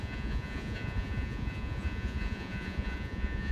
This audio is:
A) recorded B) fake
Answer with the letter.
B